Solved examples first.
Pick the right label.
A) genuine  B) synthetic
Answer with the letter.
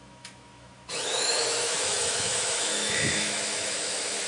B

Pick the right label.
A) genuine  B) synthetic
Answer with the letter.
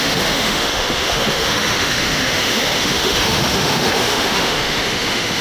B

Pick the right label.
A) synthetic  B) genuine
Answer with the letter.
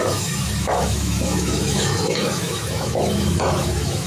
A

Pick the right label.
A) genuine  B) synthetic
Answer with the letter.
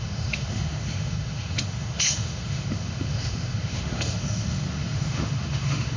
B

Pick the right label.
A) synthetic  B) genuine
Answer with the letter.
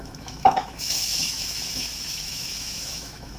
A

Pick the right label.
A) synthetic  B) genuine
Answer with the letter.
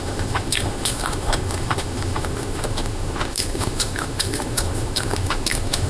A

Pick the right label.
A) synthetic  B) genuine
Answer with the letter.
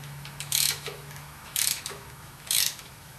A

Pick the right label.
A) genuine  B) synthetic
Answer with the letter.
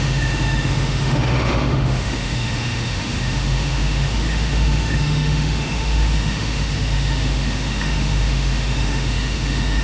B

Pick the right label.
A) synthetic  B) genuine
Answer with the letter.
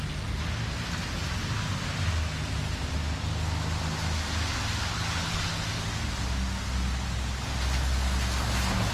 B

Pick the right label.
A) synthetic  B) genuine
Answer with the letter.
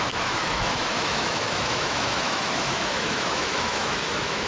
A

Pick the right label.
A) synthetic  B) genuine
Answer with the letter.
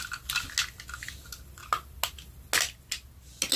B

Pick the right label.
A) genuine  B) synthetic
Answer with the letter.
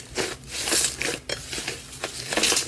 A